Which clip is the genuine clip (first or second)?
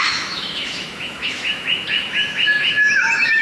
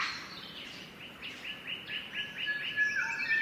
second